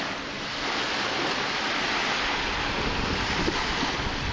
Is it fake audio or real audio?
real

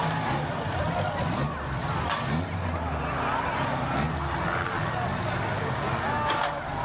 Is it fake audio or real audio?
real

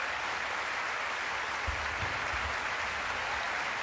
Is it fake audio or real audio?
real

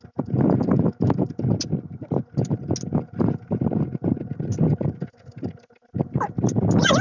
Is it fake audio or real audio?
real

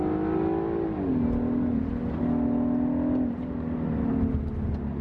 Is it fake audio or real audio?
real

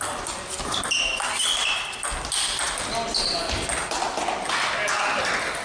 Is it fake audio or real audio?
real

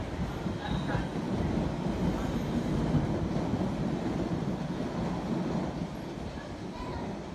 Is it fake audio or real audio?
real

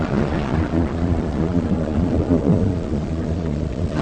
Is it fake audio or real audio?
fake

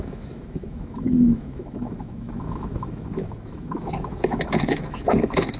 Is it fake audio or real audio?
fake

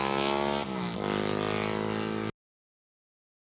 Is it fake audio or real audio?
real